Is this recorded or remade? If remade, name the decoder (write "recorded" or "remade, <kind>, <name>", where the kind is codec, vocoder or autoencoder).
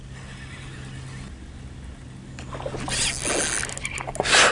recorded